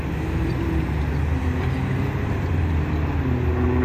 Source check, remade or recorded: recorded